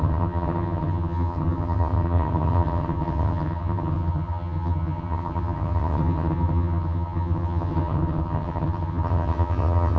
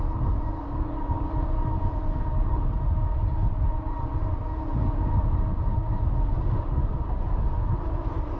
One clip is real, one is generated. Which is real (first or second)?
second